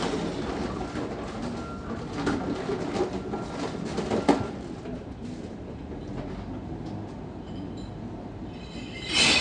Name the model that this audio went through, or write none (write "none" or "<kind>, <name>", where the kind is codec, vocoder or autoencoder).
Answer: none